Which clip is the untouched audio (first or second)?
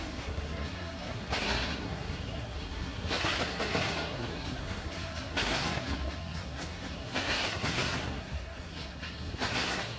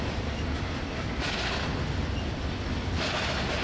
second